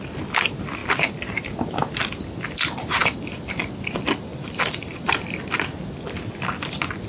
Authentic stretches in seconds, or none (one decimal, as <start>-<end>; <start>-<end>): 0.0-3.0; 3.6-4.3; 5.4-7.1